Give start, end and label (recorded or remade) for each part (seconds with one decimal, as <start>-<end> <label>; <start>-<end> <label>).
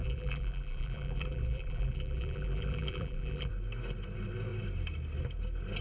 0.0-3.5 remade; 3.5-5.8 recorded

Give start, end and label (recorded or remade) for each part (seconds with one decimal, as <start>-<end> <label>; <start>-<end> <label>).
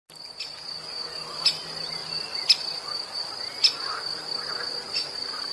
0.0-5.5 recorded